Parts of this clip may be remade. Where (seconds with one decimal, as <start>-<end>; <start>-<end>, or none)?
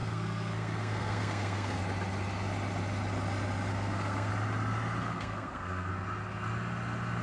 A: 0.0-1.8; 3.7-4.3; 5.0-5.9